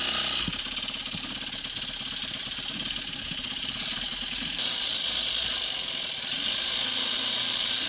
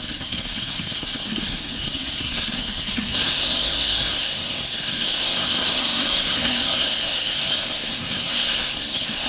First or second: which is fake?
second